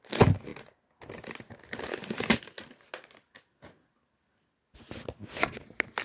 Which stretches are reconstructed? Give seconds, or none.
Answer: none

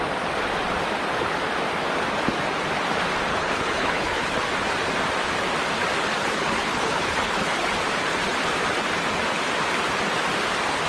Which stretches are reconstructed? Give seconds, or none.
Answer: 3.3-4.4 (codec, HILCodec); 6.2-7.7

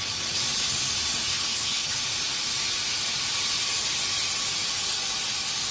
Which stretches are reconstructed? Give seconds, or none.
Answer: 1.3-1.9 (codec, HILCodec)

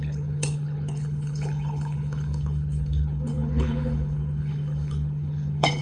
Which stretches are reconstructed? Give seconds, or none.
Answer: 0.0-5.8 (codec, HILCodec)

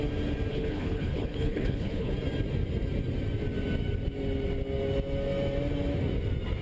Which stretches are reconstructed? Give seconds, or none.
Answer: 0.5-2.1 (codec, HILCodec)